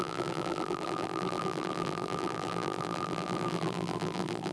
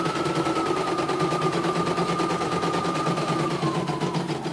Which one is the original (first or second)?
second